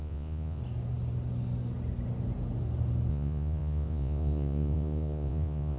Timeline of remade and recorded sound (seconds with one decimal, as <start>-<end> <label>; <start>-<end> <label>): 0.0-0.6 remade; 0.6-3.1 recorded; 3.1-5.8 remade